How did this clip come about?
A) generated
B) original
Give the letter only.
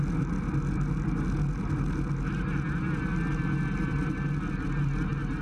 B